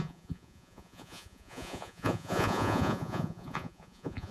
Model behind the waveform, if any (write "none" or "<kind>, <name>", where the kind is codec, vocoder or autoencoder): vocoder, Vocos